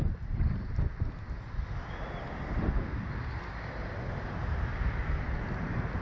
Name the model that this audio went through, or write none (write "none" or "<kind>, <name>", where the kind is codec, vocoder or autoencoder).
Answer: none